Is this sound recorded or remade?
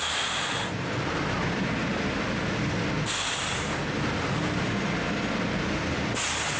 recorded